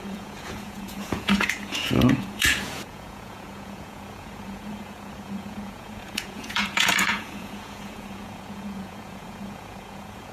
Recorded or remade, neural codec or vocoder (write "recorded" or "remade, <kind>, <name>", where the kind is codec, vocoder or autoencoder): remade, vocoder, Vocos